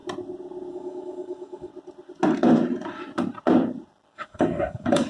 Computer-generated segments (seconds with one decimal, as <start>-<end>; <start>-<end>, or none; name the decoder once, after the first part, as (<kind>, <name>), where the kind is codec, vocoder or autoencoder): 0.7-1.7 (codec, DAC); 4.1-5.1